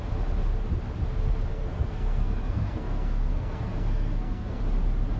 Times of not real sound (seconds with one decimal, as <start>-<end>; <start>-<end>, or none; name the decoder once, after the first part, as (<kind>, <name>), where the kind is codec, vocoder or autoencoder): 1.5-4.6 (codec, SNAC)